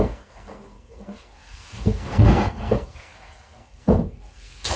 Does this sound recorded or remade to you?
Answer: remade